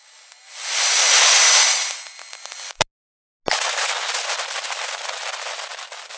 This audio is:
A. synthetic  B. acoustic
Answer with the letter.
B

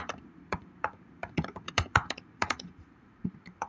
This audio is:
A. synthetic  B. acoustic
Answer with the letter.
A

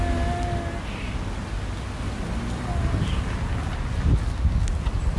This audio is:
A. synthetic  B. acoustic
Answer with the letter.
B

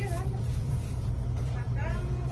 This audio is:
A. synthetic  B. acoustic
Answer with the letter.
A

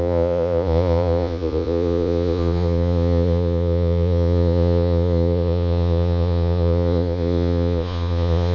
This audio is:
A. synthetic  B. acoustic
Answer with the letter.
A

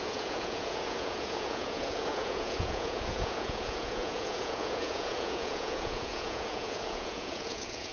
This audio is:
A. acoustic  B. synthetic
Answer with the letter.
B